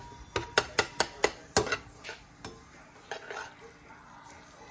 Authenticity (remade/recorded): recorded